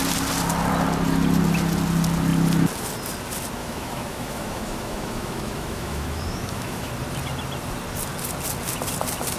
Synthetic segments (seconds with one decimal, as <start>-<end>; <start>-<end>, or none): 3.6-6.9